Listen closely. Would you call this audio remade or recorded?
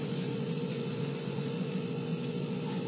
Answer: remade